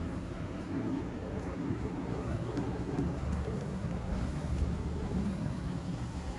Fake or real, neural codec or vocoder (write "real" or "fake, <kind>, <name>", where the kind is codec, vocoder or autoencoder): fake, codec, SNAC